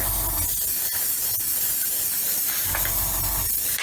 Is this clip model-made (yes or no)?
no